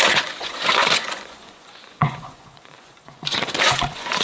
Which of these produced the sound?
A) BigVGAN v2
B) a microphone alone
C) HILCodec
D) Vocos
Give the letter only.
D